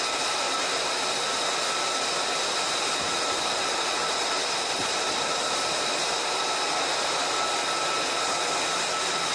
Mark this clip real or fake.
real